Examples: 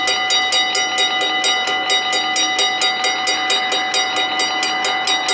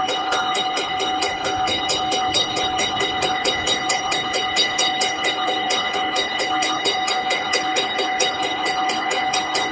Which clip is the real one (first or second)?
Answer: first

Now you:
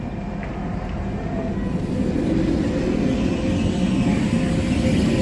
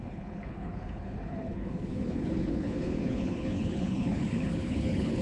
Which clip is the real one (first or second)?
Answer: first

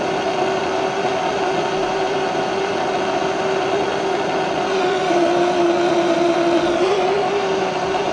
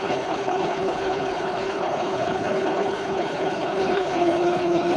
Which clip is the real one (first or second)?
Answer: first